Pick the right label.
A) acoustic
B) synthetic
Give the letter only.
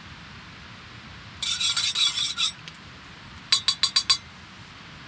A